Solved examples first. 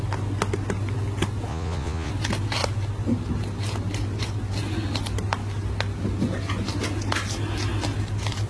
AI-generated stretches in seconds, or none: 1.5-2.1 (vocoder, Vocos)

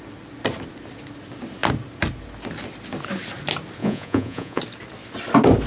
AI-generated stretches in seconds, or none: 3.8-4.6 (vocoder, Vocos)

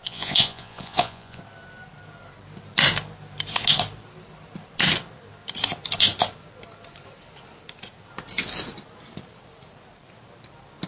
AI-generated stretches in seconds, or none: 0.0-1.4 (vocoder, Vocos)

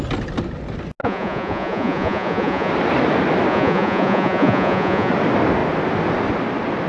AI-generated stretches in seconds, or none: 1.0-2.7 (vocoder, Vocos); 3.5-5.1

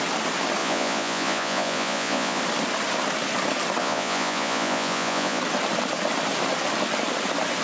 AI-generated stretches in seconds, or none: 0.6-2.4 (vocoder, Vocos); 3.8-5.4

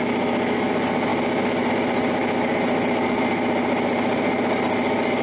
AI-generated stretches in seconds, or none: none